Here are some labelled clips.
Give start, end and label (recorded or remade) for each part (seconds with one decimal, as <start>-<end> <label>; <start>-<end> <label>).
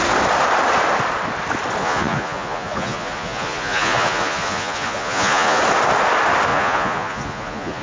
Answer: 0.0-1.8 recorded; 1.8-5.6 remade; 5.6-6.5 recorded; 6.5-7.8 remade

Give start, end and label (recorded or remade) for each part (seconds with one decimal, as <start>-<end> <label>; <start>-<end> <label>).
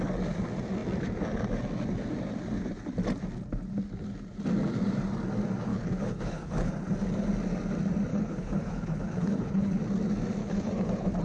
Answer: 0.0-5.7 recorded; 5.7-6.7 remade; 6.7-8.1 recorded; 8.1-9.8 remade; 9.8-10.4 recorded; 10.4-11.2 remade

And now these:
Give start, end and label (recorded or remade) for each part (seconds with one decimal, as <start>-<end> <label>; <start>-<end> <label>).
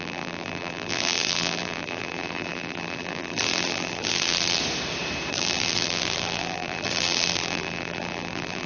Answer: 0.0-4.6 remade; 4.6-5.3 recorded; 5.3-8.7 remade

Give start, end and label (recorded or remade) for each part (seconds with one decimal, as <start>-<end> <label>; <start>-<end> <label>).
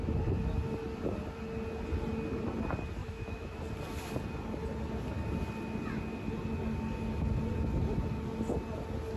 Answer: 0.0-3.0 recorded; 3.0-3.6 remade; 3.6-9.2 recorded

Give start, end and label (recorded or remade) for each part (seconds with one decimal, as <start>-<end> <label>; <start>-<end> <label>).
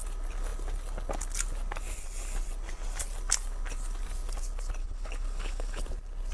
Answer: 0.0-4.8 recorded; 4.8-5.8 remade; 5.8-6.3 recorded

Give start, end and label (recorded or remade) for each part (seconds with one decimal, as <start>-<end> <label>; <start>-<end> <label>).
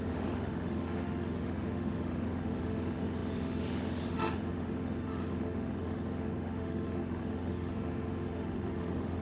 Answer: 0.0-9.2 remade